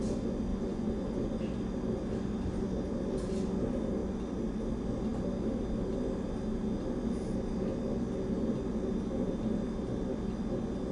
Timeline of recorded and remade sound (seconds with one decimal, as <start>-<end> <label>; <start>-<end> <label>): 0.0-0.5 recorded; 0.5-1.4 remade; 1.4-10.9 recorded